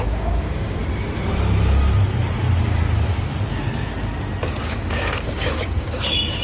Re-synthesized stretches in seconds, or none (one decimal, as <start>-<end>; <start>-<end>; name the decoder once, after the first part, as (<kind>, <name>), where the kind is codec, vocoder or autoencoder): 0.0-0.8 (codec, DAC); 4.6-6.4